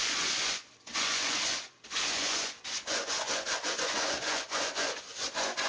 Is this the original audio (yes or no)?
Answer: no